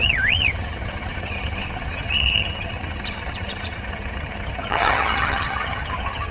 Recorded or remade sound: remade